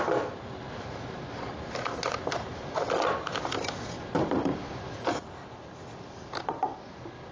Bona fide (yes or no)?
yes